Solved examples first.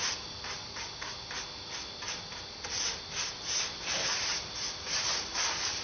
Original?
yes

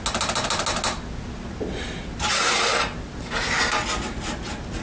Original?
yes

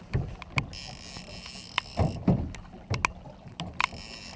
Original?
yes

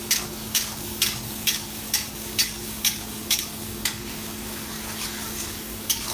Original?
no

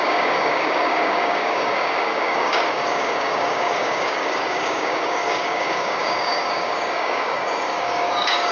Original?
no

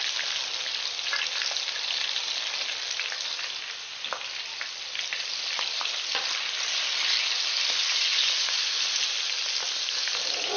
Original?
yes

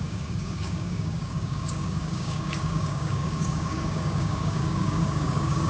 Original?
no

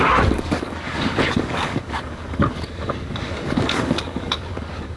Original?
no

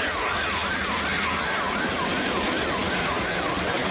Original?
yes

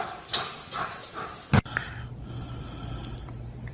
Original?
yes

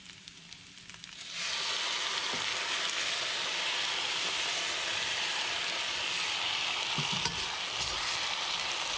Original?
yes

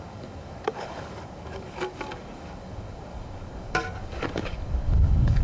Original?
no